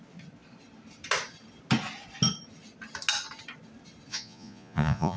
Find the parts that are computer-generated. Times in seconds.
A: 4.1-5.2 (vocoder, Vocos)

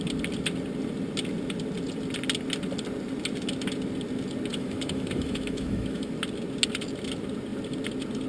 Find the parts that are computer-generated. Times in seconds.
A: 4.5-6.1 (autoencoder, DAC-VAE)

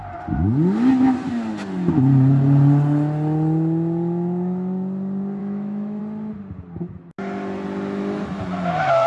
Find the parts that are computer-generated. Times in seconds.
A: 5.4-6.0 (autoencoder, DAC-VAE)

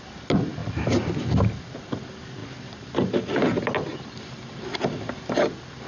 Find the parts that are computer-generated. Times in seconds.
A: none

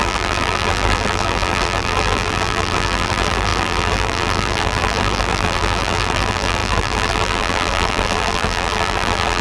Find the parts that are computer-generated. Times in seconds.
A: 0.0-9.4 (vocoder, BigVGAN v2)

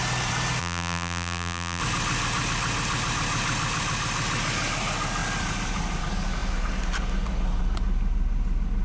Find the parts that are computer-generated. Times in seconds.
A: 0.6-1.8 (vocoder, BigVGAN v2)

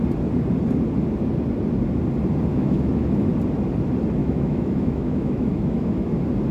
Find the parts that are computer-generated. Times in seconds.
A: 2.5-3.3 (autoencoder, DAC-VAE); 4.2-6.1

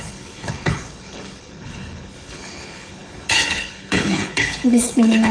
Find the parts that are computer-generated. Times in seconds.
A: 0.0-5.3 (codec, HILCodec)